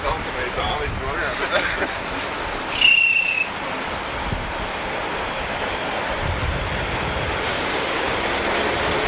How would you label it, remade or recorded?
recorded